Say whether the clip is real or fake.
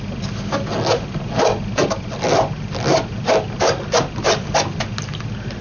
real